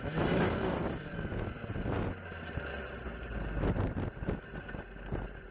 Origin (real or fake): real